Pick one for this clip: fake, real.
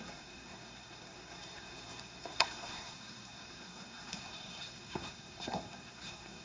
fake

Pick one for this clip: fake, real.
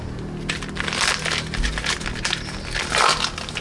real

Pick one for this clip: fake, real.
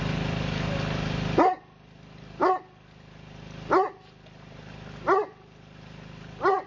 real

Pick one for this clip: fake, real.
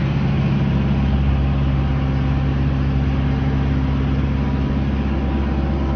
real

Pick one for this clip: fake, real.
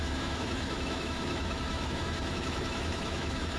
fake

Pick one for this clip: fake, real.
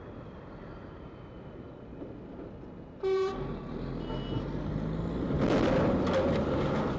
real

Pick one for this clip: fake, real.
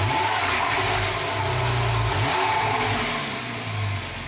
real